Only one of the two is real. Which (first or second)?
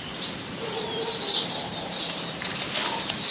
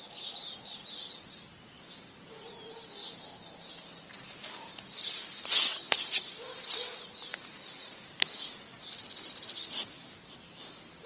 second